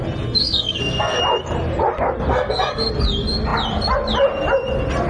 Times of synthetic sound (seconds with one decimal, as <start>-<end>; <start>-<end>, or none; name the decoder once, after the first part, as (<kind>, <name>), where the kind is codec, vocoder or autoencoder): 0.4-1.2 (codec, SNAC); 2.3-2.9